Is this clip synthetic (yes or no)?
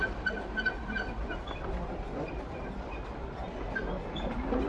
no